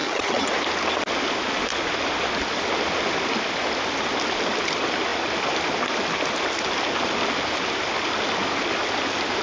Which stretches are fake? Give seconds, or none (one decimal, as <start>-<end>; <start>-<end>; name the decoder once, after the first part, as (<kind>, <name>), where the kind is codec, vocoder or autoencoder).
0.0-0.5 (vocoder, HiFi-GAN)